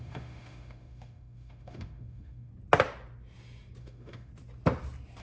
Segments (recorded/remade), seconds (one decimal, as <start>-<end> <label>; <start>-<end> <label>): 0.0-2.5 remade; 2.5-3.8 recorded; 3.8-4.3 remade; 4.3-5.2 recorded

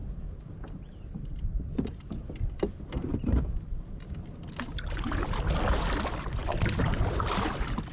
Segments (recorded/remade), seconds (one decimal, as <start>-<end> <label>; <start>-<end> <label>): 0.0-4.1 remade; 4.1-7.9 recorded

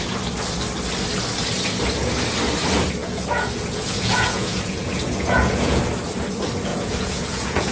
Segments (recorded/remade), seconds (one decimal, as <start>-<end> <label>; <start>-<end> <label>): 0.0-3.0 recorded; 3.0-5.8 remade; 5.8-6.7 recorded; 6.7-7.7 remade

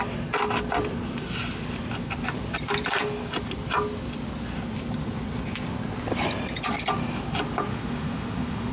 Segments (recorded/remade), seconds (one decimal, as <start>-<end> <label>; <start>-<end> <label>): 0.0-7.7 recorded; 7.7-8.7 remade

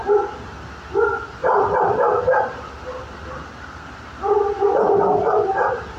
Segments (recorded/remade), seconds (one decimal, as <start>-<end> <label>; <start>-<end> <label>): 0.0-1.4 recorded; 1.4-2.7 remade; 2.7-6.0 recorded